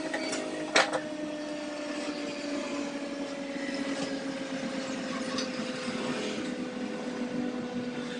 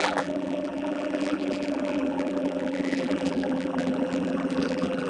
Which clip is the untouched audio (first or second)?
first